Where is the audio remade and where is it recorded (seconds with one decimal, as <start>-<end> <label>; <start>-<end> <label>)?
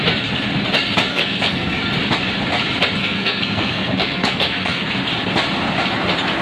0.0-1.1 recorded; 1.1-1.8 remade; 1.8-3.0 recorded; 3.0-4.9 remade; 4.9-6.4 recorded